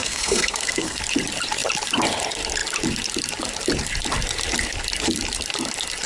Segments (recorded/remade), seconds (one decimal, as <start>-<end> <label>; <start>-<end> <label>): 0.0-1.0 remade; 1.0-6.1 recorded